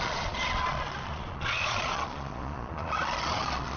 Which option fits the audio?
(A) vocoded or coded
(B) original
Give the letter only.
A